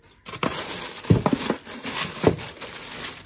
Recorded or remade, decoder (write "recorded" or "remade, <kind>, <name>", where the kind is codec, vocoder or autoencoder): recorded